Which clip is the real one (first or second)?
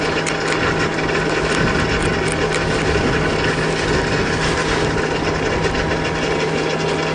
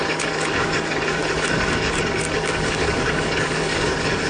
first